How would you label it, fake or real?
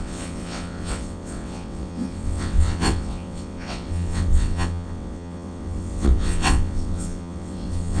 fake